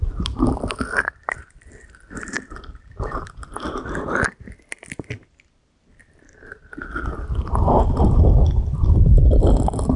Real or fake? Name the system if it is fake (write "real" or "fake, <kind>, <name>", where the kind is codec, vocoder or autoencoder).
fake, vocoder, BigVGAN v2